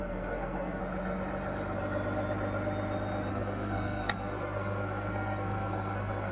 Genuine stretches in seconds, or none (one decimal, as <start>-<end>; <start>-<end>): 0.8-3.3